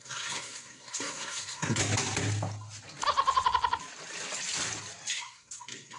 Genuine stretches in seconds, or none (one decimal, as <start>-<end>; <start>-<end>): 1.8-5.1